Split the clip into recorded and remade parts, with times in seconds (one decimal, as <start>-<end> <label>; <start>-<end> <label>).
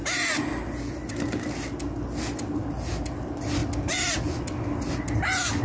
0.0-5.6 recorded